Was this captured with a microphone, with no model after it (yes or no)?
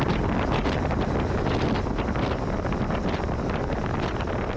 yes